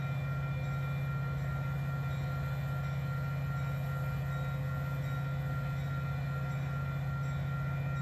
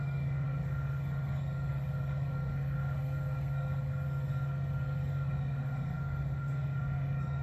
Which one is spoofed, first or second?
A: second